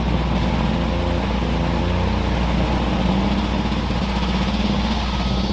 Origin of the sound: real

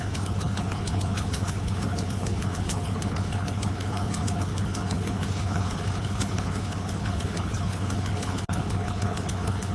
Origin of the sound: fake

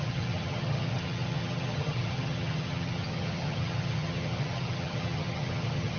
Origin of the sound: fake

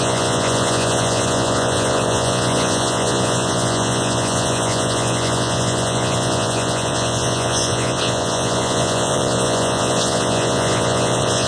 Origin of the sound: fake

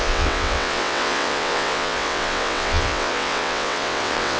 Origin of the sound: fake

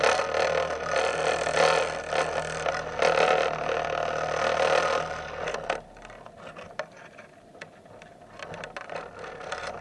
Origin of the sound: real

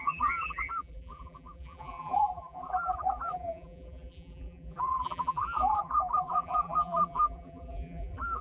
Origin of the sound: fake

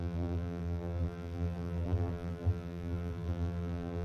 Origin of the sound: fake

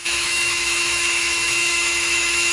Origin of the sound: fake